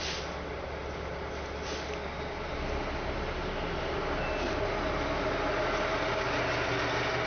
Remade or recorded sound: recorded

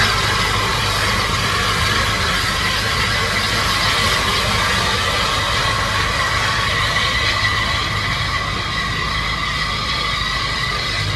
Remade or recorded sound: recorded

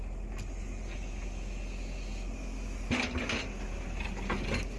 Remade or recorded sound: recorded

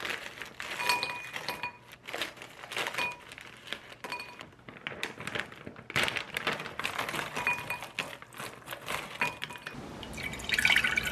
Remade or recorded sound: recorded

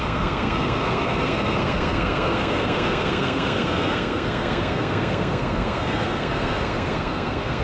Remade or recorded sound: remade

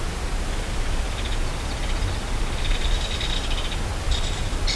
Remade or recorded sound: recorded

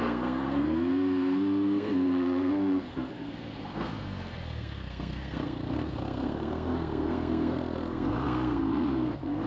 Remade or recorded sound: remade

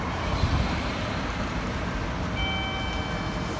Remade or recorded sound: recorded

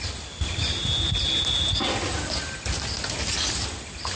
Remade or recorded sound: recorded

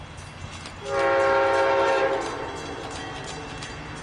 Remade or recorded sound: recorded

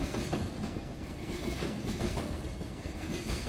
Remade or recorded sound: remade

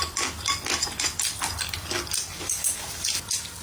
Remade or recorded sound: recorded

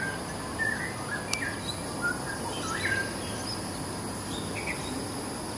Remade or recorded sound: recorded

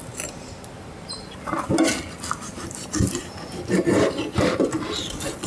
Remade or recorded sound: recorded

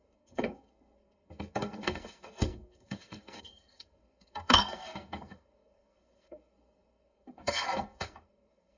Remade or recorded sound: remade